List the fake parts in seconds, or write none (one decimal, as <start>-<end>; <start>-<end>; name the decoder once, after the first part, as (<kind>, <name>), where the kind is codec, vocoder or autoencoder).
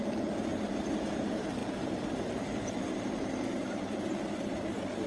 0.0-5.1 (vocoder, BigVGAN v2)